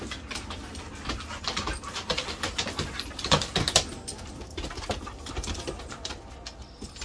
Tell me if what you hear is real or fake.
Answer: real